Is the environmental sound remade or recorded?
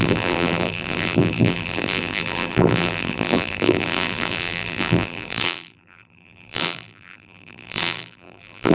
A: remade